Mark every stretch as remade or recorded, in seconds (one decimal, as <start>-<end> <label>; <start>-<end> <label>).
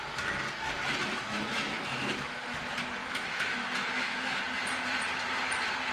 0.0-1.0 recorded; 1.0-2.6 remade; 2.6-3.0 recorded; 3.0-4.4 remade; 4.4-5.9 recorded